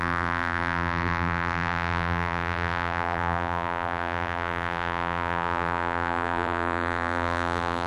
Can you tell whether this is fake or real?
fake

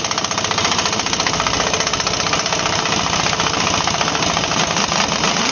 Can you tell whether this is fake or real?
real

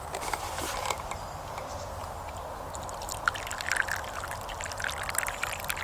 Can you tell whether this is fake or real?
real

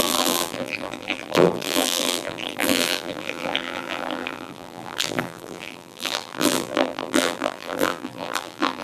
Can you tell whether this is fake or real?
fake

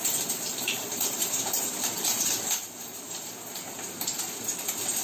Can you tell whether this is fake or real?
fake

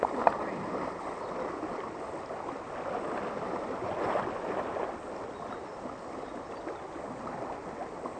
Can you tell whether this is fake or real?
real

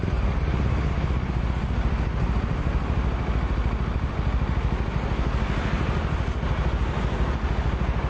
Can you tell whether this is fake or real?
real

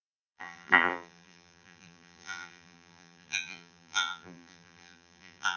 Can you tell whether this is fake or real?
fake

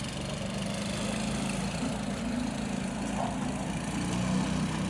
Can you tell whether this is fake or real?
real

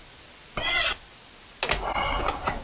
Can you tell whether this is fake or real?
real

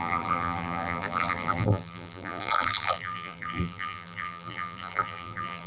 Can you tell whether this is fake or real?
fake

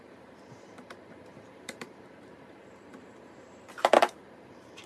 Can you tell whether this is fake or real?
fake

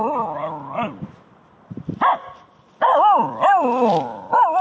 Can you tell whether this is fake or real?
fake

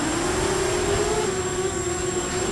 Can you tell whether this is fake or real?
real